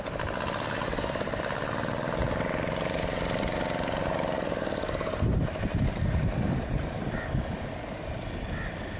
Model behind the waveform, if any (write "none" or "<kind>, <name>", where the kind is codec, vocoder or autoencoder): none